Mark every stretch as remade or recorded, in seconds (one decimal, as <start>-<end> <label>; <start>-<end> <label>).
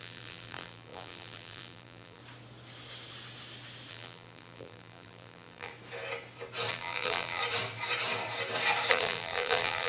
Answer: 0.0-2.2 remade; 2.2-3.9 recorded; 3.9-5.7 remade; 5.7-6.7 recorded; 6.7-7.4 remade; 7.4-8.9 recorded; 8.9-9.9 remade